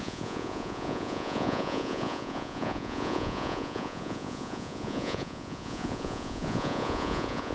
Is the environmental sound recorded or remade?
remade